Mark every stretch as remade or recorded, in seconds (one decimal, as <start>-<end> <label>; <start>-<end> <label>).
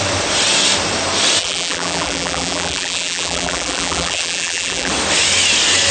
0.0-1.4 recorded; 1.4-4.9 remade; 4.9-5.9 recorded